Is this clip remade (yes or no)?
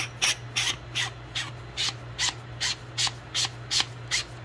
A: no